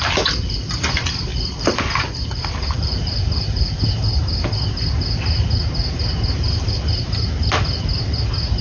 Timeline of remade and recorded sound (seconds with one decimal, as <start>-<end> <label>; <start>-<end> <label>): 0.0-1.3 recorded; 1.3-3.8 remade; 3.8-8.6 recorded

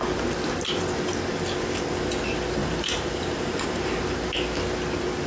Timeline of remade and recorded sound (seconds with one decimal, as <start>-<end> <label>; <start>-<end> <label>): 0.0-2.6 recorded; 2.6-4.0 remade; 4.0-5.3 recorded